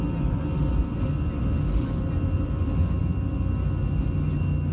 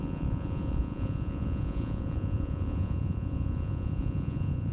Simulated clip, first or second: second